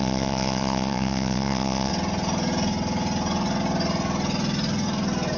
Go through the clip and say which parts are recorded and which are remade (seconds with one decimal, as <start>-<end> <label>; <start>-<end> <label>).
0.0-1.9 remade; 1.9-5.4 recorded